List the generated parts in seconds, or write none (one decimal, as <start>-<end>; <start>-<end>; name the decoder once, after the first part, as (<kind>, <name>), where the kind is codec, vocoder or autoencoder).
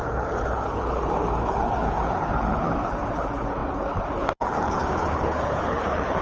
0.0-6.2 (codec, HILCodec)